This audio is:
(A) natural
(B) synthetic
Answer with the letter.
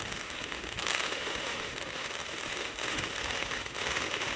B